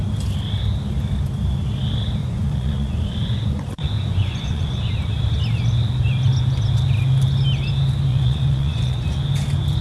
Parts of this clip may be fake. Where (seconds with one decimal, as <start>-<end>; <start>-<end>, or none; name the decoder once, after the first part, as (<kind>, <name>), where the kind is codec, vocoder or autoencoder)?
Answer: 2.2-4.9 (vocoder, Vocos); 8.1-9.2